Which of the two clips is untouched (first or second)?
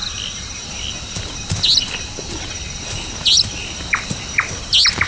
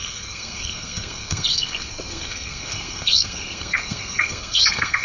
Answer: first